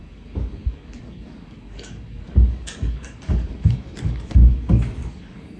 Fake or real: fake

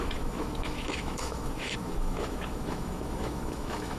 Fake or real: fake